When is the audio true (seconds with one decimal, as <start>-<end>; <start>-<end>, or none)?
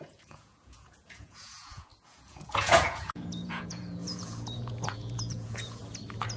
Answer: 5.8-6.4